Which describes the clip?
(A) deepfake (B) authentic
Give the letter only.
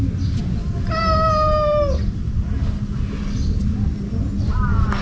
B